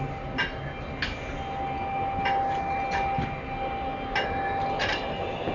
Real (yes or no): yes